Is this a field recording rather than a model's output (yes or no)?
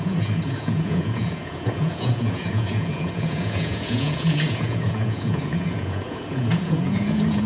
no